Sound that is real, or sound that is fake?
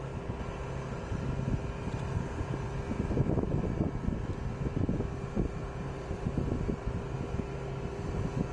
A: real